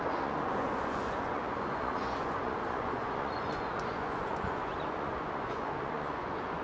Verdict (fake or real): fake